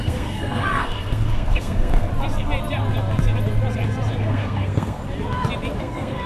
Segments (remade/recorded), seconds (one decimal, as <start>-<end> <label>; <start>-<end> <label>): 0.0-2.1 remade; 2.1-4.2 recorded; 4.2-5.0 remade; 5.0-5.8 recorded; 5.8-6.3 remade

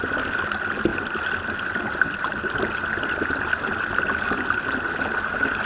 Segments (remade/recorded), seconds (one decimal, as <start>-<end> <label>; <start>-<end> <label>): 0.0-0.9 recorded; 0.9-3.4 remade; 3.4-5.7 recorded

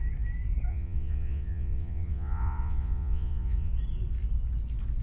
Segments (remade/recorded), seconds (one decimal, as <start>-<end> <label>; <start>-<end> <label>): 0.0-0.7 recorded; 0.7-3.7 remade; 3.7-5.0 recorded